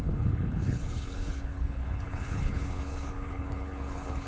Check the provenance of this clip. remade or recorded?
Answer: remade